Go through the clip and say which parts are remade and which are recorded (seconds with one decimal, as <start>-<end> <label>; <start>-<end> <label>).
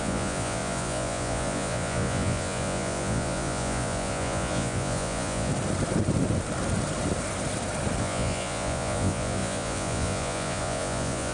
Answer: 0.0-5.5 remade; 5.5-8.0 recorded; 8.0-11.3 remade